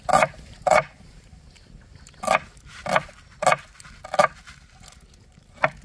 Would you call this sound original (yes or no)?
yes